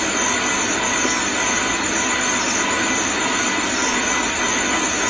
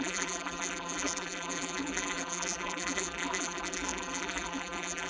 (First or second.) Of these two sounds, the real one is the first